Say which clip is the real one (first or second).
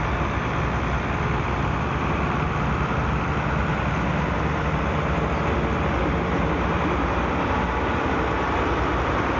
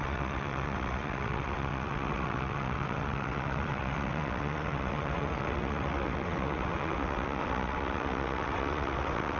first